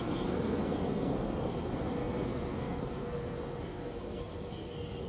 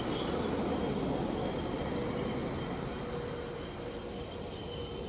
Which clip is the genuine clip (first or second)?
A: second